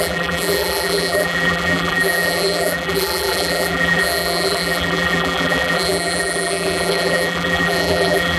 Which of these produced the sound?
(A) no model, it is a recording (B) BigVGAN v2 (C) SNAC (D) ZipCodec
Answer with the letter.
B